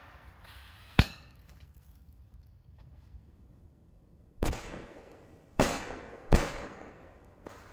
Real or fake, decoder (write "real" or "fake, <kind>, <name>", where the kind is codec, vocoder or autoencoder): fake, codec, SNAC